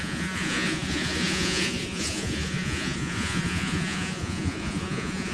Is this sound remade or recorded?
remade